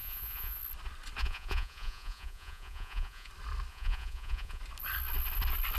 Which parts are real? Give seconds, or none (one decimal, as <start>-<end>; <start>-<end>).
0.6-1.2; 3.3-3.7; 4.6-5.8